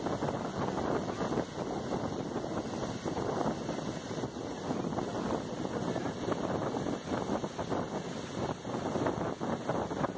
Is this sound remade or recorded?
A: recorded